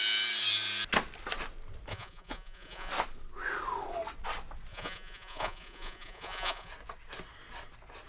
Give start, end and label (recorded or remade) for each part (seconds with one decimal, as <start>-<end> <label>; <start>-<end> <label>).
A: 0.0-1.9 recorded; 1.9-2.9 remade; 2.9-4.7 recorded; 4.7-6.7 remade; 6.7-8.1 recorded